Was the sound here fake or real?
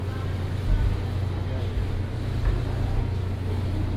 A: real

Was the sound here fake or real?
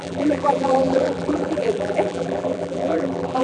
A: fake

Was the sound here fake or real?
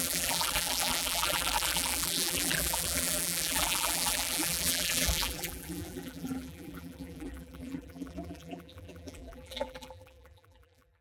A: fake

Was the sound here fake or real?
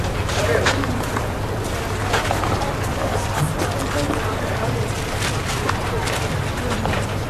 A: fake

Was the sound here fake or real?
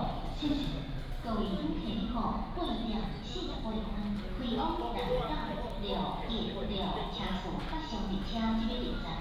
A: real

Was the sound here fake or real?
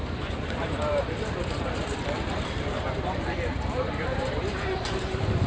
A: fake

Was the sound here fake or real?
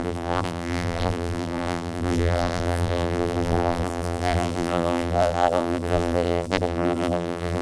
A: fake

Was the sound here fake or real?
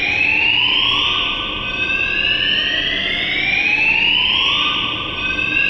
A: real